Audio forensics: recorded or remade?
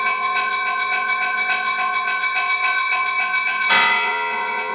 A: remade